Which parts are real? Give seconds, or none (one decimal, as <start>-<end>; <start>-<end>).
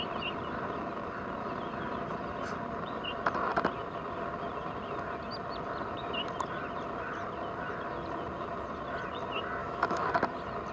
0.0-9.6; 10.1-10.7